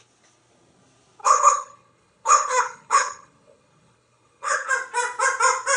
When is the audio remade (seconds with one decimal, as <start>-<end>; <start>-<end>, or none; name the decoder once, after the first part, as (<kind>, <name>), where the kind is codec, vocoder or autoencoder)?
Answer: 1.2-4.7 (codec, HILCodec)